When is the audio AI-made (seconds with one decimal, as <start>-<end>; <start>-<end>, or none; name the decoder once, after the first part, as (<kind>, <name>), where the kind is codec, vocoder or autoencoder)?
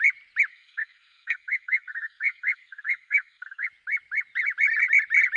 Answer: 0.5-3.7 (codec, SNAC)